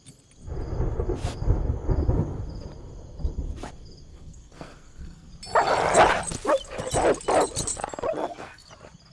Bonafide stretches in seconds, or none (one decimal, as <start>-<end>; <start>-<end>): 0.0-4.1; 5.3-8.2; 8.7-9.1